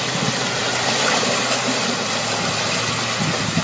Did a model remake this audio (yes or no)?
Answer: no